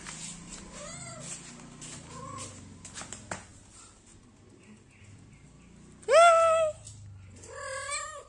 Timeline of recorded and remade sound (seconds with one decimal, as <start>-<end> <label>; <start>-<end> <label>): 0.0-8.3 recorded